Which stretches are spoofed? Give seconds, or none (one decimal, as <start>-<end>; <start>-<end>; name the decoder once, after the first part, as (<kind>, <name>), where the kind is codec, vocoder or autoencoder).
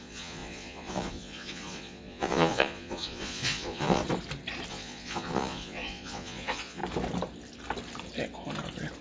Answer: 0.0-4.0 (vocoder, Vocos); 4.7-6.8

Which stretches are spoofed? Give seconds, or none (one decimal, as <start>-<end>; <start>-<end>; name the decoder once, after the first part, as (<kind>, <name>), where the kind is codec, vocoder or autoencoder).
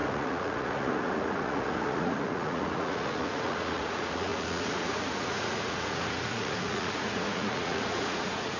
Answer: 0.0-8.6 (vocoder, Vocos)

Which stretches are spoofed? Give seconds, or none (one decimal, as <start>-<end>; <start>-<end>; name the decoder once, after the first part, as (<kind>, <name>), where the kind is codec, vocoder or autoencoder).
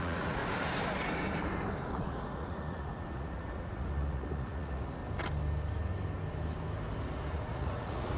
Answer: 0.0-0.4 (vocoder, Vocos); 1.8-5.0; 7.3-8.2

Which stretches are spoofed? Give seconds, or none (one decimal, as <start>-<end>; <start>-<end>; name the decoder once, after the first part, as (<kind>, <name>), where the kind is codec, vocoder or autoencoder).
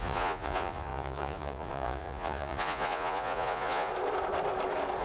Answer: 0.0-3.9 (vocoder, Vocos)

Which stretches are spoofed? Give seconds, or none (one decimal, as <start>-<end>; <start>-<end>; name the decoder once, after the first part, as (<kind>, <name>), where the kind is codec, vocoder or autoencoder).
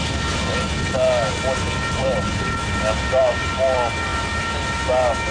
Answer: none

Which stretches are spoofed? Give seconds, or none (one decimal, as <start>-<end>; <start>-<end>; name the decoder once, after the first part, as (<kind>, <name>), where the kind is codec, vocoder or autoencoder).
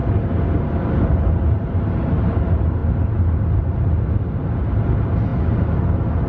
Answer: none